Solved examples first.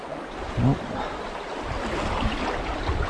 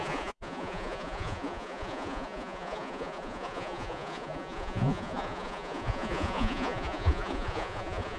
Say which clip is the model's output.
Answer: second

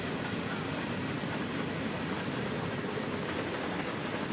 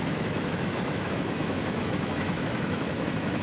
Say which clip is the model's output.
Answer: second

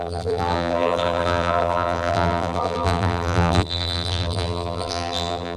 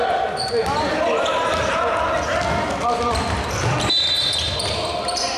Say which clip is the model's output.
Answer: first